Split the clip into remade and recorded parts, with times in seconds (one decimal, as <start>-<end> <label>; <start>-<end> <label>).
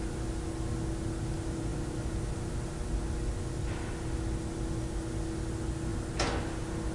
0.0-6.9 recorded